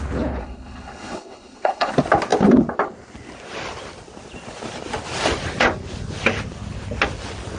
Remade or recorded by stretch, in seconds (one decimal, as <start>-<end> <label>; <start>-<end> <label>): 0.0-0.4 recorded; 0.4-1.9 remade; 1.9-7.6 recorded